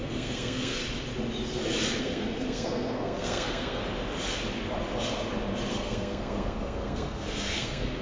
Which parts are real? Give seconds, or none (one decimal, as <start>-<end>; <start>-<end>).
0.8-2.0; 3.8-5.7